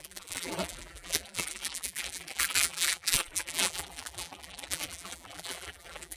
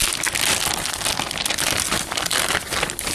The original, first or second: second